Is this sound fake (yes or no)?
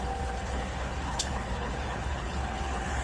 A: yes